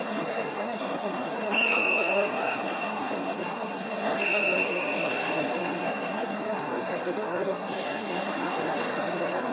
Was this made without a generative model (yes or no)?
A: no